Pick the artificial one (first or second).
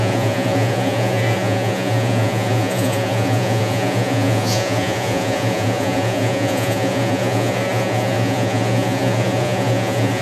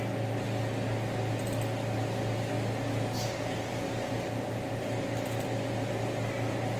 first